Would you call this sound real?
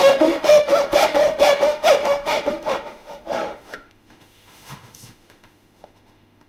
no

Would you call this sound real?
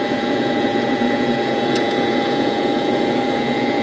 no